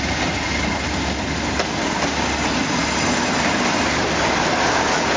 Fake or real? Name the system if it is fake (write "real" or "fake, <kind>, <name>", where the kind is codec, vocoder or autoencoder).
real